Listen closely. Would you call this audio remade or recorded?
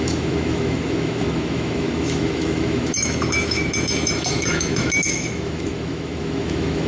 remade